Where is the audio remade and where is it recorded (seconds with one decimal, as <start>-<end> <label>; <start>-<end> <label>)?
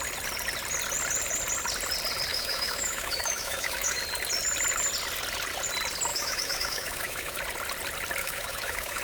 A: 0.0-2.3 recorded; 2.3-4.0 remade; 4.0-6.1 recorded; 6.1-7.4 remade; 7.4-8.2 recorded; 8.2-9.0 remade